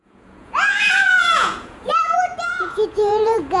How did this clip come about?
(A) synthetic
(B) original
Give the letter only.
A